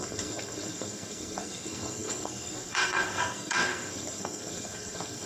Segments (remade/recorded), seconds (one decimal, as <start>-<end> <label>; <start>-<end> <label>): 0.0-5.3 remade